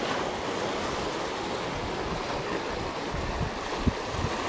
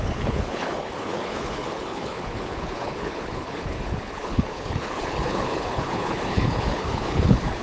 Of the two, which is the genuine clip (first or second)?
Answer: first